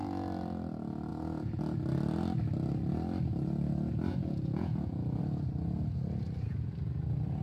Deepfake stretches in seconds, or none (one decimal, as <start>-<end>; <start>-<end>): 1.1-1.6; 4.1-5.2